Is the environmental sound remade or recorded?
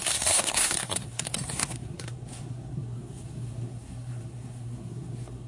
remade